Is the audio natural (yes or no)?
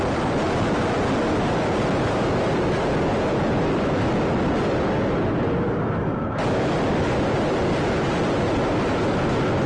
yes